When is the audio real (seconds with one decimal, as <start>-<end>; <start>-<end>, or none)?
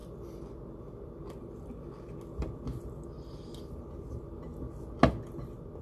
0.0-5.8